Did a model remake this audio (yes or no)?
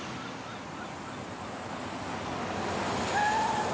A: no